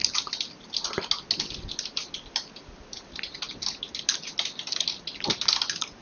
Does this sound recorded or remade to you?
recorded